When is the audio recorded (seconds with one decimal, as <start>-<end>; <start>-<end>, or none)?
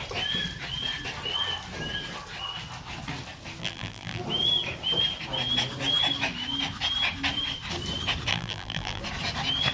0.0-3.6; 4.2-8.3; 9.0-9.7